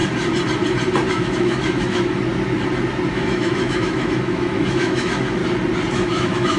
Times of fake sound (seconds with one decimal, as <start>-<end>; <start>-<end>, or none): 1.1-2.2; 3.1-5.4; 5.9-6.6